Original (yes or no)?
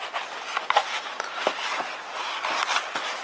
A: yes